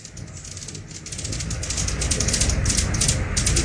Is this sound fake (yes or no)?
no